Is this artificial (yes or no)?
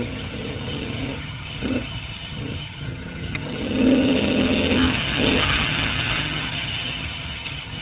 yes